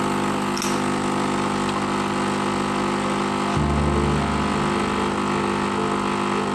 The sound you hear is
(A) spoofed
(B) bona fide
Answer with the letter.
B